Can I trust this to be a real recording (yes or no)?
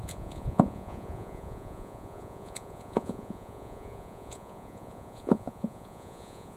no